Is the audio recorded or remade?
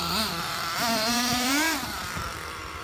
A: remade